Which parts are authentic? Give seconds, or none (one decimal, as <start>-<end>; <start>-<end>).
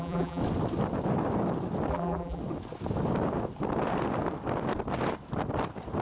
0.4-1.9; 2.4-6.0